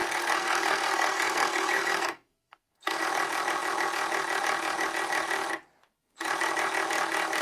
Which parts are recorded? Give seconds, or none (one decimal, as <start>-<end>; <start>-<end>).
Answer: 3.0-7.4